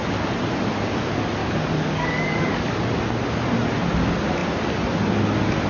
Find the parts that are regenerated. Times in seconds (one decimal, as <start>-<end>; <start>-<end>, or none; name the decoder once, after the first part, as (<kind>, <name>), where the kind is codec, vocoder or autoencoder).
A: 1.4-2.8 (codec, DAC)